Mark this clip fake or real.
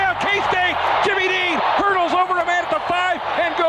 real